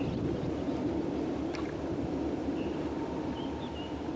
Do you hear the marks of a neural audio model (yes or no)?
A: no